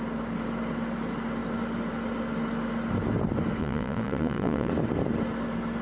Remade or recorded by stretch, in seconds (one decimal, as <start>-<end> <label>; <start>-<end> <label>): 0.0-3.6 recorded; 3.6-4.7 remade; 4.7-5.8 recorded